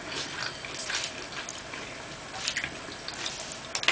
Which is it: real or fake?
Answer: real